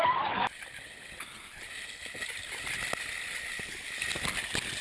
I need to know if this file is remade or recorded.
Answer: recorded